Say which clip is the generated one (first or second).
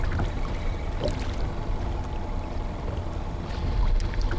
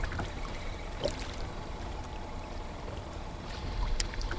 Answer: second